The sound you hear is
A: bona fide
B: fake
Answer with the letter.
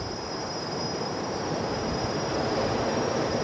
B